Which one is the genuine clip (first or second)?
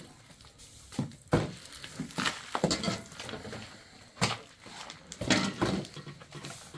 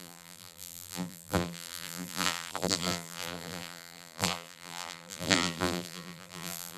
first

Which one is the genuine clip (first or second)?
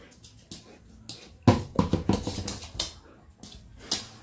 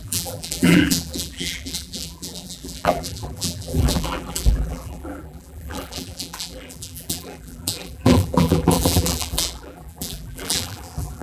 first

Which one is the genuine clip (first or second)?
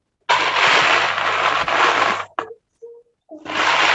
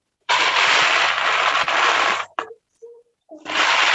first